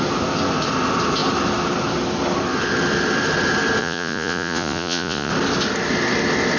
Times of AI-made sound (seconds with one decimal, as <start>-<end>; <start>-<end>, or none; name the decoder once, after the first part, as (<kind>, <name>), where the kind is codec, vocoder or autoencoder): 3.8-5.3 (vocoder, Vocos)